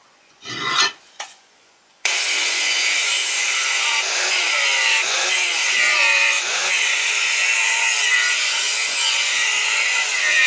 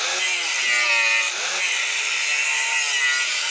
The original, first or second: second